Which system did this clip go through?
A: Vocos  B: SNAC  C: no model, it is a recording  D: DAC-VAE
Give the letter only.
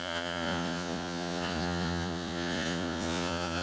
A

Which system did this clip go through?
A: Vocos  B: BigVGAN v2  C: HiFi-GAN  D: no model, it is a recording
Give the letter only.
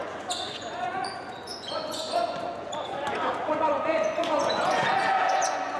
A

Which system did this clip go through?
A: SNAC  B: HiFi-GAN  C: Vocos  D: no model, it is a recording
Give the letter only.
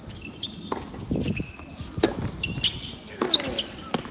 D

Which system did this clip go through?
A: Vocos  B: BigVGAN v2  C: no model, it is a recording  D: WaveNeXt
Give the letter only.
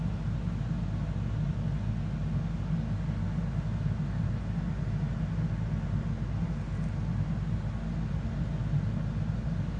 C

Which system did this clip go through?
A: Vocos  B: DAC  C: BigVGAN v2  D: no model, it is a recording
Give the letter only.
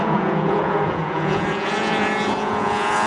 A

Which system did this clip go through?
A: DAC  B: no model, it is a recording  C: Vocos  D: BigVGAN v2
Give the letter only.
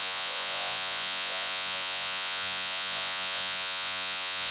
C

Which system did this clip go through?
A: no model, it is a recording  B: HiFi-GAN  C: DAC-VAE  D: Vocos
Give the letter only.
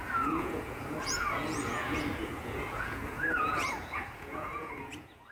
D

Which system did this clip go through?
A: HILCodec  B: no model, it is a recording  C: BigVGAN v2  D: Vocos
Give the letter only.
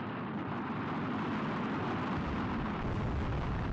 B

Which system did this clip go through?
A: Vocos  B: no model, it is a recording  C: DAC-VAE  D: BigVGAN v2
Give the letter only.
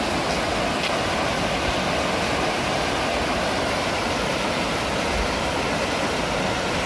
B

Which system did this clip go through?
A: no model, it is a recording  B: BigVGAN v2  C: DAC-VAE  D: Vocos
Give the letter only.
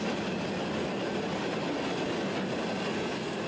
A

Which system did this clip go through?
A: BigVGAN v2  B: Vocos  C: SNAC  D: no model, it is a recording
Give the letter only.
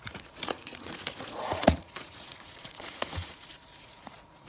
B